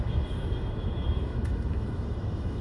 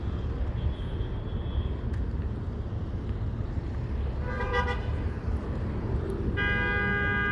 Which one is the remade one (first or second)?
first